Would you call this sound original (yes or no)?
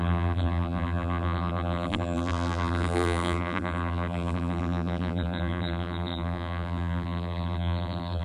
no